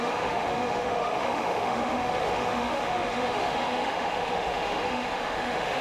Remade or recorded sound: remade